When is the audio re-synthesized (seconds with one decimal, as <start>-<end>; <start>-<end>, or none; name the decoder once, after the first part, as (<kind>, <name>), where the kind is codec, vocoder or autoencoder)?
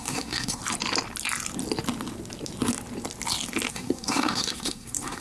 0.0-0.6 (codec, SNAC); 3.7-5.2